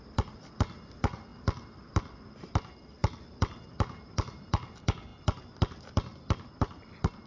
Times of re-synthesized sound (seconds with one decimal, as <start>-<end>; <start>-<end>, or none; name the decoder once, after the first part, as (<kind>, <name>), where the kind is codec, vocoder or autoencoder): none